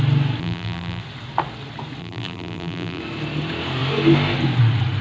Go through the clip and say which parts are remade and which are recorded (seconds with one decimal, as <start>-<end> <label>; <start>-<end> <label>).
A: 0.0-0.4 recorded; 0.4-1.0 remade; 1.0-2.0 recorded; 2.0-3.0 remade; 3.0-5.0 recorded